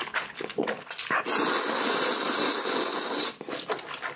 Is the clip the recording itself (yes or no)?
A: yes